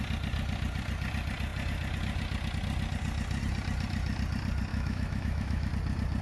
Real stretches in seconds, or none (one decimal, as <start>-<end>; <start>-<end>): 0.0-4.7; 5.7-6.2